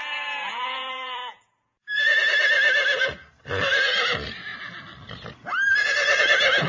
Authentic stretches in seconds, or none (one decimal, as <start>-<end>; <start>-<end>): 2.2-6.7